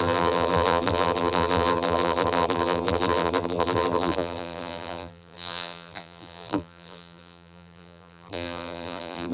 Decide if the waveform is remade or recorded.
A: remade